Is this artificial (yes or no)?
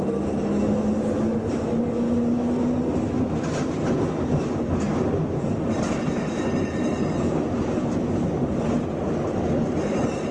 no